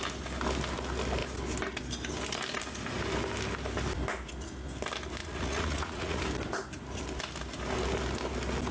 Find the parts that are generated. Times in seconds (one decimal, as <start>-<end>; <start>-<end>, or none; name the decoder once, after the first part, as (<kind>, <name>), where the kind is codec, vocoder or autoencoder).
5.2-6.2 (vocoder, Vocos)